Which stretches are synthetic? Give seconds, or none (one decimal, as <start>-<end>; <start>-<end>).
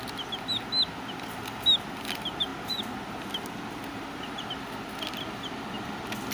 3.9-4.5